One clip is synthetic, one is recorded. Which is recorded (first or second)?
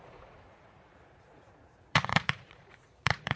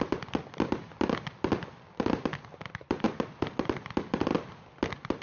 second